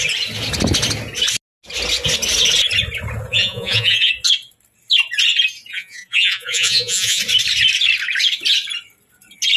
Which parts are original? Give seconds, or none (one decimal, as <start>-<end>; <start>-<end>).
0.0-3.3; 4.1-5.7; 7.2-9.6